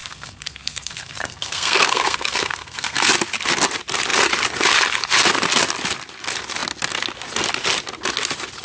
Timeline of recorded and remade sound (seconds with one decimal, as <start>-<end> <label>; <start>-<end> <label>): 0.0-3.1 remade; 3.1-8.6 recorded